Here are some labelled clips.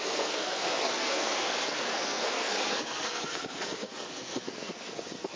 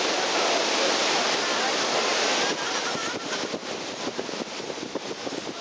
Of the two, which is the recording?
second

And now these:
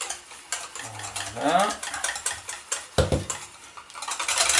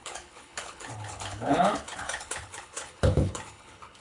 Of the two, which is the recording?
first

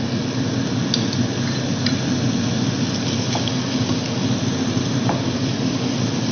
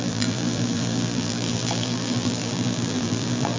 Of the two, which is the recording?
first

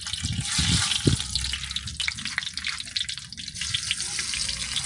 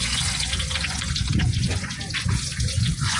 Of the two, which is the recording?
first